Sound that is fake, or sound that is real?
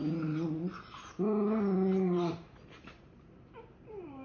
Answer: fake